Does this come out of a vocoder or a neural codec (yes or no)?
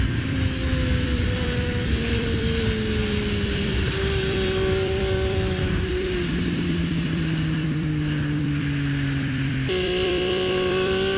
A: yes